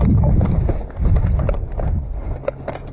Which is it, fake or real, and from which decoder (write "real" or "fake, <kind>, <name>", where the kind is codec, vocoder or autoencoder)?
real